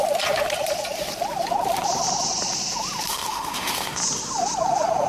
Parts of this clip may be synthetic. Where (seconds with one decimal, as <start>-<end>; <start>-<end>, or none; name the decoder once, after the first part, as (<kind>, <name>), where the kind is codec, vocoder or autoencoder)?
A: 3.1-4.0 (autoencoder, DAC-VAE)